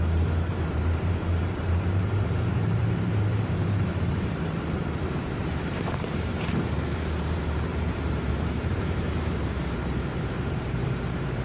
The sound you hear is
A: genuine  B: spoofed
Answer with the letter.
B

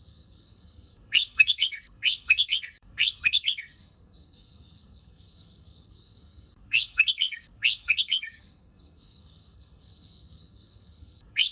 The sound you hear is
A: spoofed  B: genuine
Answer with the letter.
A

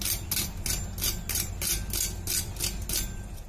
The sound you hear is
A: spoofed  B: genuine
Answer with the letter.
B